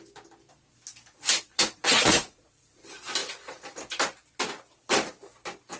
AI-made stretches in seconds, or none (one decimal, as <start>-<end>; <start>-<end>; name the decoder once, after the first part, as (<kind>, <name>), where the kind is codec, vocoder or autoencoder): 1.5-2.8 (vocoder, Vocos)